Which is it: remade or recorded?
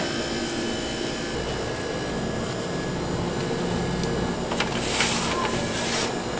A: recorded